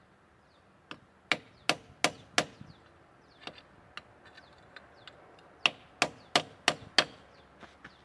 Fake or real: real